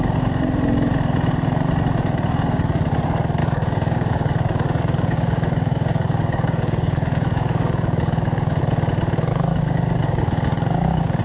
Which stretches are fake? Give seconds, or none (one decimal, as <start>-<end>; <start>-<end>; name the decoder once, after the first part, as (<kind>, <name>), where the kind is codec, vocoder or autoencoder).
3.4-8.6 (codec, DAC); 9.3-11.2